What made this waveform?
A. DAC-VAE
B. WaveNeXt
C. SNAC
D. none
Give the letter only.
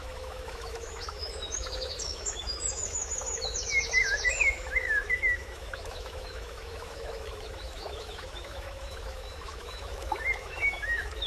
A